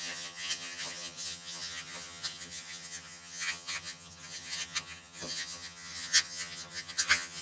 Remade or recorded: remade